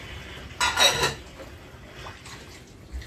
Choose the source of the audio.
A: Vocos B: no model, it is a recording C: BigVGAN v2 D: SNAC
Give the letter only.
B